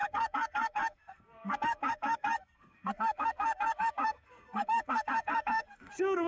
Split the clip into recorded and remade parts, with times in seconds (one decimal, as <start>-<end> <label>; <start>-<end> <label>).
0.0-6.3 remade